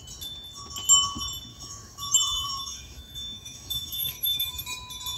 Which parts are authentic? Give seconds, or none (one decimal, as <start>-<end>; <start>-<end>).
0.0-1.5; 4.6-5.2